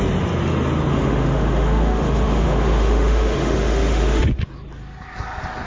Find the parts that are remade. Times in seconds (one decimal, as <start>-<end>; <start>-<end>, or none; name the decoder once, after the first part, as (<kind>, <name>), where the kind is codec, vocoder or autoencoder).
0.9-4.3 (autoencoder, DAC-VAE)